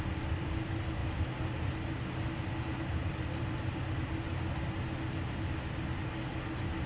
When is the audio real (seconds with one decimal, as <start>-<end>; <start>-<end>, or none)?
1.0-3.1; 4.3-5.3